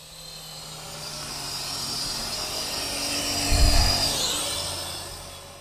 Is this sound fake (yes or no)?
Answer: no